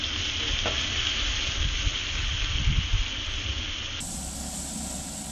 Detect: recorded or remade recorded